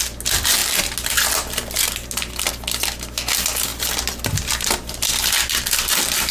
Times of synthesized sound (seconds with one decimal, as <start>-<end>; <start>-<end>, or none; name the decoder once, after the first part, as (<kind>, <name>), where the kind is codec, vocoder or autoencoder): none

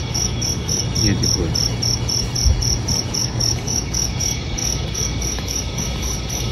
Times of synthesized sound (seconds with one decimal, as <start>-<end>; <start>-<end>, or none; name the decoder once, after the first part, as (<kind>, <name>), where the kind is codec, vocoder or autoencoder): 0.0-0.8 (codec, DAC); 3.2-6.5

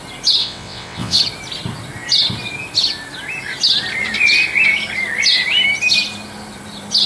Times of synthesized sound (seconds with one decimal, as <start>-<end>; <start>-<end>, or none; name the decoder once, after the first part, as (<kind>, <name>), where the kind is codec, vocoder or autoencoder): 0.4-1.2 (vocoder, WaveNeXt)

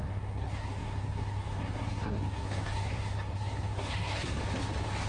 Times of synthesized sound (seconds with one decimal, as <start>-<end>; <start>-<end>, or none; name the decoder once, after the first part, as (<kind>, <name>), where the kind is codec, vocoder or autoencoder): 0.0-4.4 (codec, SNAC)

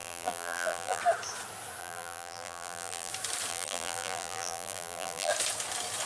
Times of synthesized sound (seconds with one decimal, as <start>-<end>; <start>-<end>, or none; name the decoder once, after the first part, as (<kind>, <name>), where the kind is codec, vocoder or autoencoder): 0.0-1.0 (vocoder, BigVGAN v2); 1.8-3.1; 3.5-5.3